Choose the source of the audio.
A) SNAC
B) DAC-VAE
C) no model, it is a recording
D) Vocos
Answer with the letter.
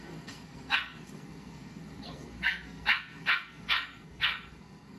A